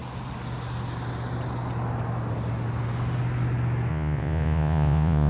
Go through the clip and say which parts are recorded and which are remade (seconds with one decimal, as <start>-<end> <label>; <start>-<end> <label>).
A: 0.0-3.9 recorded; 3.9-5.3 remade

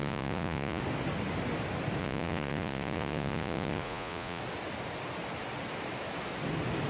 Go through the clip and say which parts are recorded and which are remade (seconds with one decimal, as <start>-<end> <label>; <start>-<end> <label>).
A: 0.0-0.8 remade; 0.8-2.0 recorded; 2.0-4.4 remade; 4.4-6.9 recorded

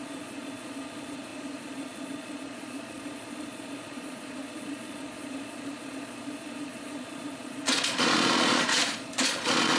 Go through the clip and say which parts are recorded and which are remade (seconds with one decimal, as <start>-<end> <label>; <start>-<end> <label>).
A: 0.0-9.8 remade